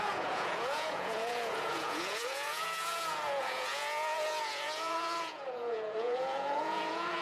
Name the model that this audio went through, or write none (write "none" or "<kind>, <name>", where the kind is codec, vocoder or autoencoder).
vocoder, Vocos